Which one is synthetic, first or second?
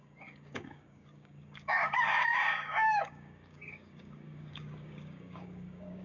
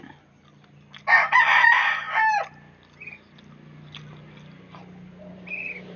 first